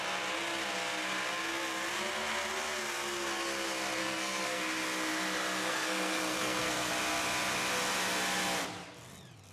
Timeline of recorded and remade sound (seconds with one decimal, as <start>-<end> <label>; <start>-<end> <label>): 0.0-4.0 recorded; 4.0-4.6 remade; 4.6-5.6 recorded; 5.6-6.9 remade; 6.9-9.5 recorded